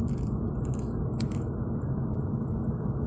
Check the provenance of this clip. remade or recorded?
recorded